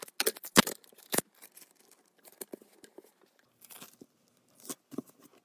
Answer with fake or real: real